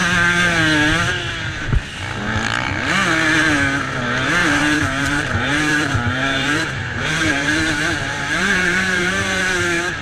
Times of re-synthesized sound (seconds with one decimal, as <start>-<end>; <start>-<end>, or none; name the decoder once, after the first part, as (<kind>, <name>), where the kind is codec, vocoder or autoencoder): 4.4-9.4 (vocoder, BigVGAN v2)